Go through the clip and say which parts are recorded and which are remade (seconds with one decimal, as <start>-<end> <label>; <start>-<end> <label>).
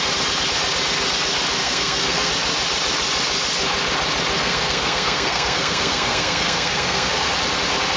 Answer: 0.0-1.6 recorded; 1.6-2.3 remade; 2.3-4.4 recorded; 4.4-7.3 remade; 7.3-8.0 recorded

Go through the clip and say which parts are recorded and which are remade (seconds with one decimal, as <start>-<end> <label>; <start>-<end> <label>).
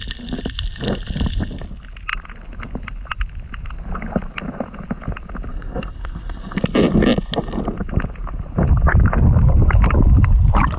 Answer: 0.0-5.5 recorded; 5.5-6.6 remade; 6.6-10.8 recorded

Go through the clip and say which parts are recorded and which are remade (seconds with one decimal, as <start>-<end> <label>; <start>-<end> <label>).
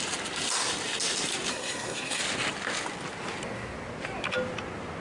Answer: 0.0-1.5 recorded; 1.5-2.2 remade; 2.2-5.0 recorded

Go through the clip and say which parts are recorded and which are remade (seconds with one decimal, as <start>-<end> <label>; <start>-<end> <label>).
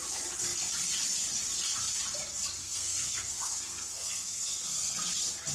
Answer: 0.0-2.6 recorded; 2.6-5.1 remade; 5.1-5.5 recorded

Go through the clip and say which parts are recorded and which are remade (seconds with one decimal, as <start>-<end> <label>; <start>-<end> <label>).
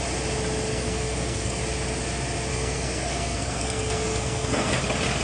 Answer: 0.0-0.7 recorded; 0.7-1.6 remade; 1.6-2.5 recorded; 2.5-4.8 remade; 4.8-5.2 recorded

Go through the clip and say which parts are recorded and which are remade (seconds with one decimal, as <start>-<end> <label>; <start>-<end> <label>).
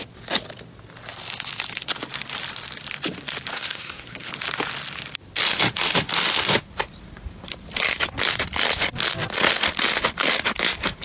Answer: 0.0-3.5 recorded; 3.5-4.3 remade; 4.3-11.0 recorded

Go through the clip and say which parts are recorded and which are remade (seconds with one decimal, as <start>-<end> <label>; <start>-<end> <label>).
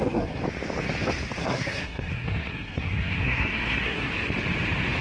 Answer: 0.0-0.4 remade; 0.4-1.4 recorded; 1.4-4.1 remade; 4.1-5.0 recorded